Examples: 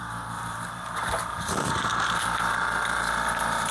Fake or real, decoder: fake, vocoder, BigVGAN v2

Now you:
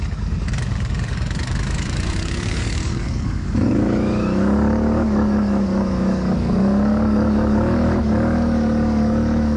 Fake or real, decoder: fake, codec, DAC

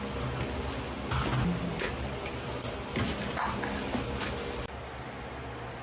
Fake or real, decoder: real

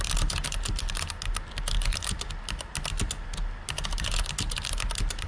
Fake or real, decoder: real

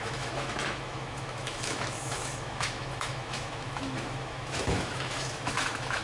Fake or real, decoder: fake, autoencoder, DAC-VAE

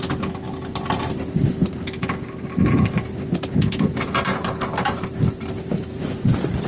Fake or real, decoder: real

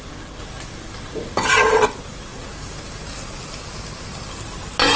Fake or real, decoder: real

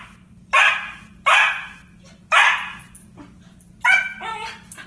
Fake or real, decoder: real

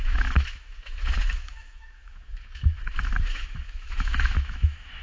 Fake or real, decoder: fake, autoencoder, DAC-VAE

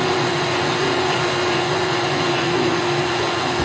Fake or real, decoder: fake, vocoder, Vocos